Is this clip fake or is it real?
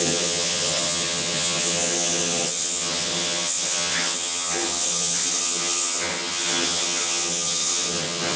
fake